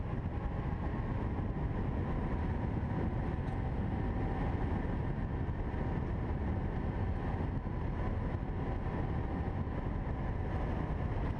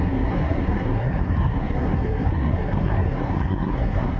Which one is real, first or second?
first